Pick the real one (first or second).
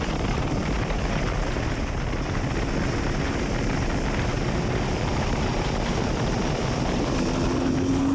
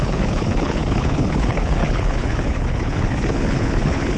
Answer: first